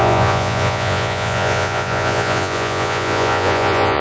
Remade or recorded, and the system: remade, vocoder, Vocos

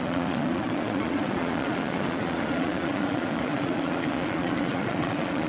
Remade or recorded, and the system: remade, vocoder, Vocos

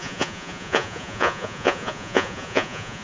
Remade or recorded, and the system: remade, vocoder, Vocos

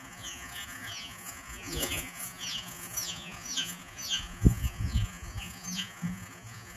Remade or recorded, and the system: remade, vocoder, Vocos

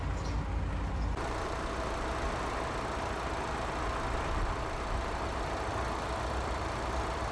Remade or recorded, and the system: recorded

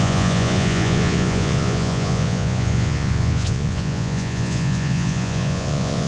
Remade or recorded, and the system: remade, vocoder, Vocos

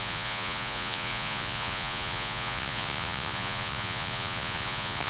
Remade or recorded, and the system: remade, vocoder, Vocos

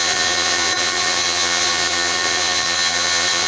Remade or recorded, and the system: remade, vocoder, Vocos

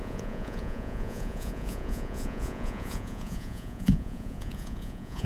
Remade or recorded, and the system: remade, vocoder, Vocos